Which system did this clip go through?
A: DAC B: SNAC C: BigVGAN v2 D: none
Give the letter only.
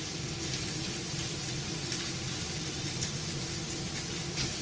D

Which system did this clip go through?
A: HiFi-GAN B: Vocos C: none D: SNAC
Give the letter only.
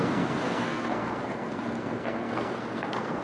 D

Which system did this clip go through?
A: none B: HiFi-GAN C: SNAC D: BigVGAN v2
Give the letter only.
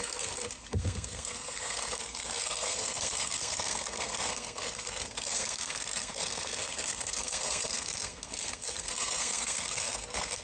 C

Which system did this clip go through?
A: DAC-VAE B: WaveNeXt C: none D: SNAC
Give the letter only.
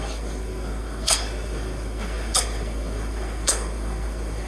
D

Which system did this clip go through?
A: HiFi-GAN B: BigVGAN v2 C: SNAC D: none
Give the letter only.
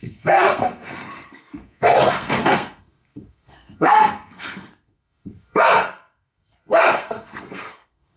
C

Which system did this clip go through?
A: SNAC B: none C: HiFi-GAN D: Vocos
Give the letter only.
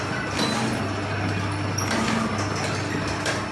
B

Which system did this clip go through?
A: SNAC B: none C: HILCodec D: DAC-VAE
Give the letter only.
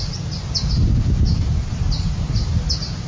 B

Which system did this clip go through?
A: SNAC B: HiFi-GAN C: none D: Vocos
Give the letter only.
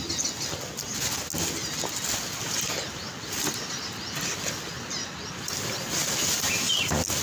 C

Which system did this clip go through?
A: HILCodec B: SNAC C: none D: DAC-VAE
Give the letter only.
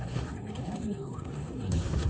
B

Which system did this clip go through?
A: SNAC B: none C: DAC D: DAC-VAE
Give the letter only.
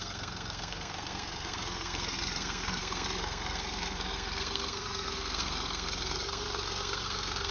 A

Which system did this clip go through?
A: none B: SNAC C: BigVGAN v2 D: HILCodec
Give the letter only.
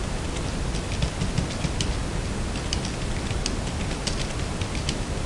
A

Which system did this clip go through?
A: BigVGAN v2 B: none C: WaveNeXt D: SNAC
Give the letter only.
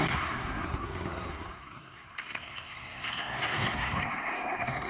D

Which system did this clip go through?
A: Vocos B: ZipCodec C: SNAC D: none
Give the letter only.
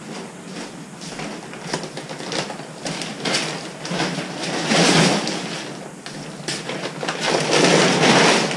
D